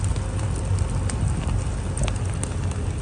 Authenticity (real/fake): real